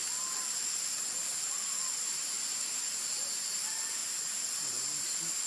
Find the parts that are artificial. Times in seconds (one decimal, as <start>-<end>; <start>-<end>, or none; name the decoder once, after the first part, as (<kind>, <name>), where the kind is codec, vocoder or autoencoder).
none